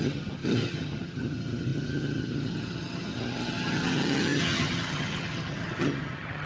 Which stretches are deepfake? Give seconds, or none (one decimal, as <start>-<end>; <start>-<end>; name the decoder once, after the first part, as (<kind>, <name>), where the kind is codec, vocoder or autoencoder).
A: 0.0-6.5 (vocoder, HiFi-GAN)